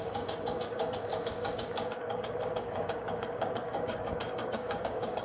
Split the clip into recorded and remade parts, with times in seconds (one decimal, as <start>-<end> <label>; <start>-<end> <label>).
0.0-5.2 remade